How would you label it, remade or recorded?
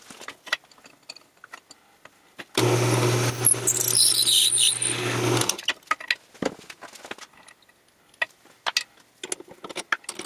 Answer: recorded